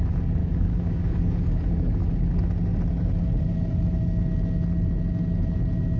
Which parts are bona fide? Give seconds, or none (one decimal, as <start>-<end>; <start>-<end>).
0.0-0.4; 2.1-6.0